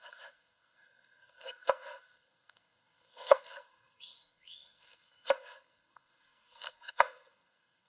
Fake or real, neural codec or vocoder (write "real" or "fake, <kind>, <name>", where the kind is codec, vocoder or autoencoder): fake, codec, SNAC